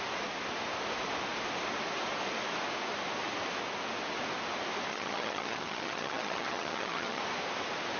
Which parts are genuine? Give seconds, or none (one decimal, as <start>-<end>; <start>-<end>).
0.0-4.9; 7.2-8.0